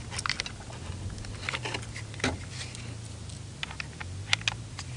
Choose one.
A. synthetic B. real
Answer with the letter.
B